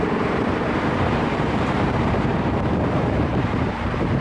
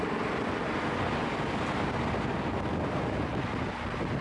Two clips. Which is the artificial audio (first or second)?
first